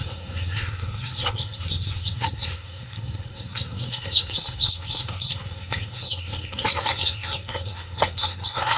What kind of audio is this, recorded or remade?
remade